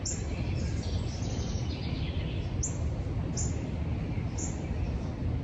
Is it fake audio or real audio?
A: real